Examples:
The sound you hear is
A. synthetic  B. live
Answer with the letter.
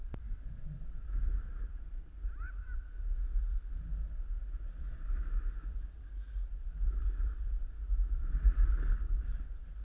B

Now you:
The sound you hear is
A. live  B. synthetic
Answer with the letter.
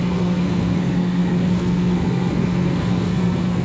B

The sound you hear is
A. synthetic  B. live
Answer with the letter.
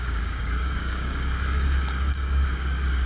A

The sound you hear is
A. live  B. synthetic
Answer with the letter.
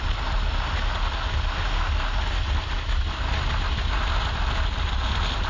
A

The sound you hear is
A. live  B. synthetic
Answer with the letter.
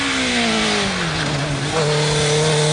A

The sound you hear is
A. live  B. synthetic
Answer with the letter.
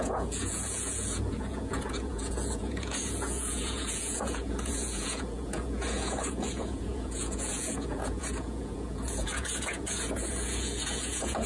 B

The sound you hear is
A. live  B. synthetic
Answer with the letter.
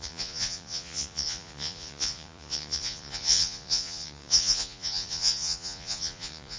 B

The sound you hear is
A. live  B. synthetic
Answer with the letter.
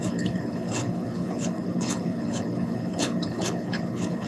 B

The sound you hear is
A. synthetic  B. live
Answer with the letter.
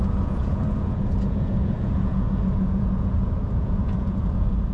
A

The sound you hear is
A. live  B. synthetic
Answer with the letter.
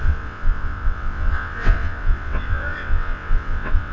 B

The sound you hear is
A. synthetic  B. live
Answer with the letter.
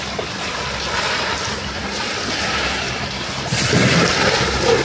B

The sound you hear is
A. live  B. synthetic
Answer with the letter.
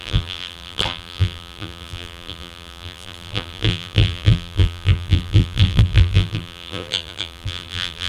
B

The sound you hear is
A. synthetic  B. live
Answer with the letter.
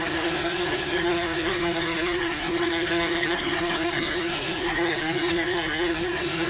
A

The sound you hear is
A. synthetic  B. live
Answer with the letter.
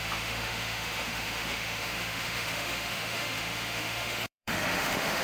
A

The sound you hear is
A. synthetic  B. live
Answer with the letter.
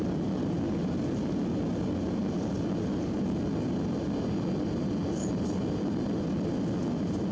B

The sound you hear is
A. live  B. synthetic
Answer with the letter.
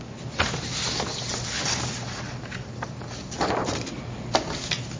A